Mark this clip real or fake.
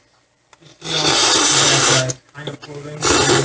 real